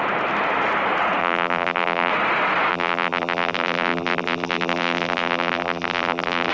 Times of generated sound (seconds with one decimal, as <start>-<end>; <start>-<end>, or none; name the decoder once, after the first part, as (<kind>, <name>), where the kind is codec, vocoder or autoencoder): 1.2-2.1 (vocoder, BigVGAN v2); 2.7-6.5